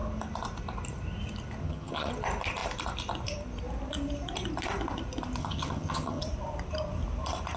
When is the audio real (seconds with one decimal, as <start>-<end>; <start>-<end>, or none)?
0.0-1.6; 2.1-5.4; 6.2-7.6